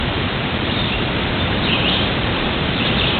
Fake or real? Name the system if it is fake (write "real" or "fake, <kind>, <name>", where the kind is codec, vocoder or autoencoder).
fake, vocoder, BigVGAN v2